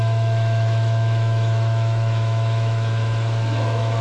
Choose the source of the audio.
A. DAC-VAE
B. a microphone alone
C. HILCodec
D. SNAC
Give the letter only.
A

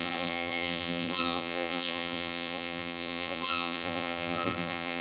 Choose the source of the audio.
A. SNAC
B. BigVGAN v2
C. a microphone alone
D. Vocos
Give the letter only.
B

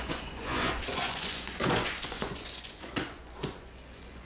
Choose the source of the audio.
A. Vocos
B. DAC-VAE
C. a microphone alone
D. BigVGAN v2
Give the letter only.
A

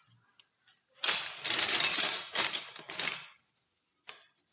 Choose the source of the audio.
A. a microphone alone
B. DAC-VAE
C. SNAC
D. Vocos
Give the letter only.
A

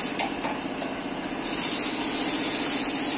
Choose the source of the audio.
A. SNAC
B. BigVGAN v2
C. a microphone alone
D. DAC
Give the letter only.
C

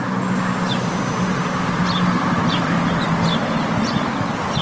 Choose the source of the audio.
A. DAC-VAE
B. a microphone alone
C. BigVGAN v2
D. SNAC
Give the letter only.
B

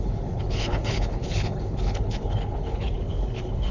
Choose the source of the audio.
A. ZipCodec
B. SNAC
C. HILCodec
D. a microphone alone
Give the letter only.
C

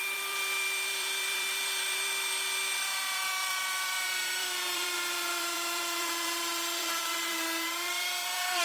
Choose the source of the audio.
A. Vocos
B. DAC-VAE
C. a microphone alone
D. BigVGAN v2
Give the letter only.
D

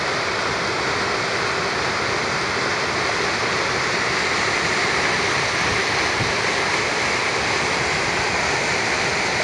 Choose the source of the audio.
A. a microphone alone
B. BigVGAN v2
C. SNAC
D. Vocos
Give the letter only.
A